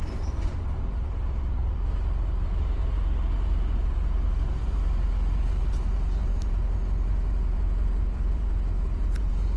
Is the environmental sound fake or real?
fake